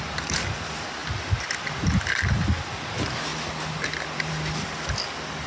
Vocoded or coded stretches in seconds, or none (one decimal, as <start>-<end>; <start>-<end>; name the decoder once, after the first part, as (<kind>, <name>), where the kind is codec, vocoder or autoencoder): none